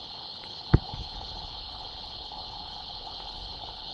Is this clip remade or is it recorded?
remade